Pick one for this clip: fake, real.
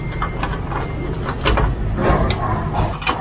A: real